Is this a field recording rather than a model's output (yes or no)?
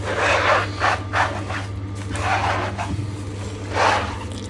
yes